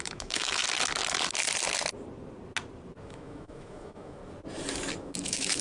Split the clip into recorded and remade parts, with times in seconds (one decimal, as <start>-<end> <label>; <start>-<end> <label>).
0.0-0.6 remade; 0.6-3.0 recorded; 3.0-4.2 remade; 4.2-5.0 recorded; 5.0-5.6 remade